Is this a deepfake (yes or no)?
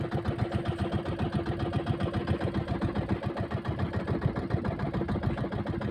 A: no